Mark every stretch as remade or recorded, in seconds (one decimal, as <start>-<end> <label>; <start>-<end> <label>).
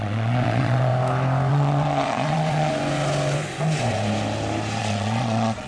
0.0-0.9 remade; 0.9-1.5 recorded; 1.5-2.7 remade; 2.7-4.8 recorded; 4.8-5.7 remade